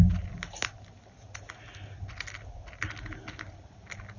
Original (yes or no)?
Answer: yes